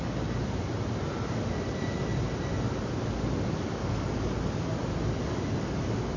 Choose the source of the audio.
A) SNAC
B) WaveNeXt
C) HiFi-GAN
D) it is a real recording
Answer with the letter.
D